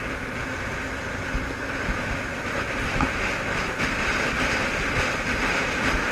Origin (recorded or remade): recorded